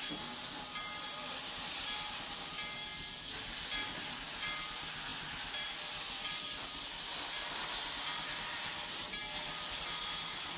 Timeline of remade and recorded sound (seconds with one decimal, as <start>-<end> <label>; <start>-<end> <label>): 0.0-10.6 recorded